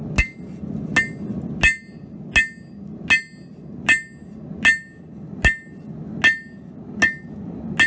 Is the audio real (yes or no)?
yes